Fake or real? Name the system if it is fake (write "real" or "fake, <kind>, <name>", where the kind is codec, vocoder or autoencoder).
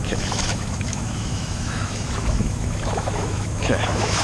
fake, autoencoder, DAC-VAE